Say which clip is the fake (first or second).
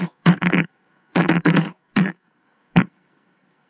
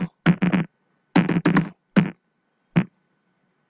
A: first